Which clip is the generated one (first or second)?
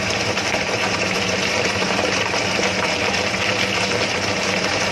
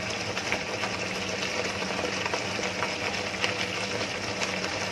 first